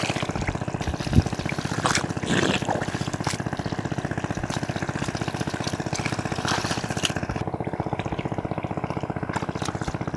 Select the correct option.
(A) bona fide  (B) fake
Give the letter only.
A